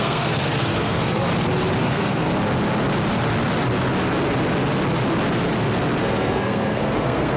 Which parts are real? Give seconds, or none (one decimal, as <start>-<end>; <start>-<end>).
1.2-1.8; 2.3-6.0

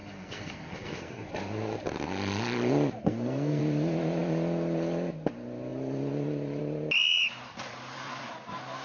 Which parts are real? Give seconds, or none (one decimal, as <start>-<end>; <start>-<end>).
1.3-3.0; 3.6-8.8

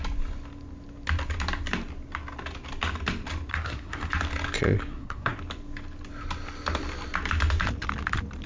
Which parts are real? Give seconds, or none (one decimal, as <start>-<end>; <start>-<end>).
0.0-3.5; 4.1-4.9; 5.4-8.5

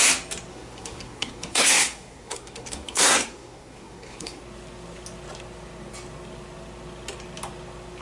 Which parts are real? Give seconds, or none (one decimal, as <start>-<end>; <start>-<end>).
0.0-0.5; 4.4-8.0

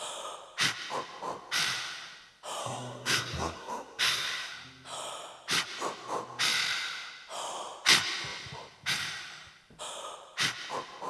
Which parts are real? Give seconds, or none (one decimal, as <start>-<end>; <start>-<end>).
0.0-2.6; 4.5-11.1

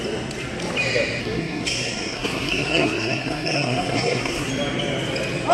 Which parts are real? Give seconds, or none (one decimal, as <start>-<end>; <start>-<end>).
0.0-1.2; 4.5-5.5